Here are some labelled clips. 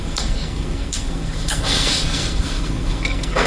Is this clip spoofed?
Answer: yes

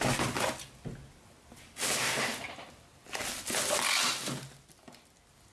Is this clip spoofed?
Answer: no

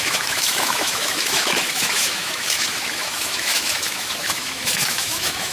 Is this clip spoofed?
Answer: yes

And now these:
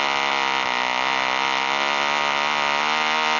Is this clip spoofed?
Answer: no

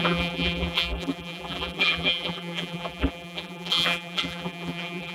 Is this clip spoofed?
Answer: yes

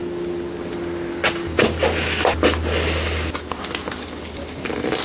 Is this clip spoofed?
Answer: no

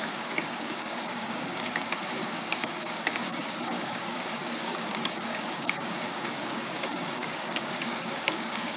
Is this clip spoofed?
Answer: yes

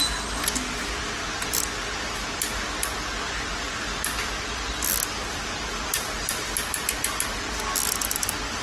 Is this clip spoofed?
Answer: no